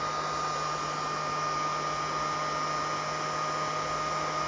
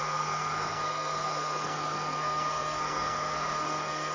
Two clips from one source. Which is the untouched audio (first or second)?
first